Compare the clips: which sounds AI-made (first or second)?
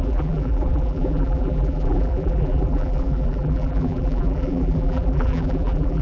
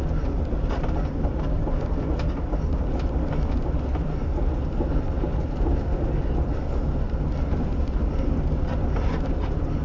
first